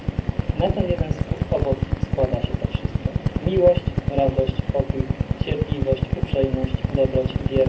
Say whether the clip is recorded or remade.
recorded